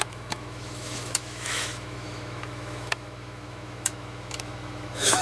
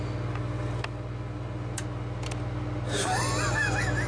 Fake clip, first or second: first